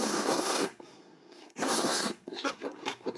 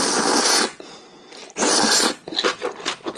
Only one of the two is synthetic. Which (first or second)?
first